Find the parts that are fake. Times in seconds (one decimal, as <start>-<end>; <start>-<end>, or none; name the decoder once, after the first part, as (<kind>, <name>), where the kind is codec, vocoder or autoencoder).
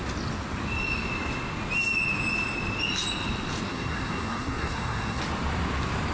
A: 3.7-5.2 (codec, SNAC)